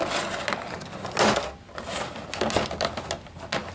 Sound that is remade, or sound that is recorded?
recorded